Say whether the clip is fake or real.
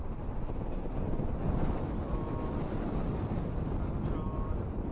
real